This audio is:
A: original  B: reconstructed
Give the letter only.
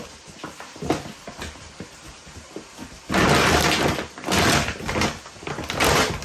A